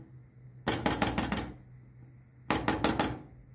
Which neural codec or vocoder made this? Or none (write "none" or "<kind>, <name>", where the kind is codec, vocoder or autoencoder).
none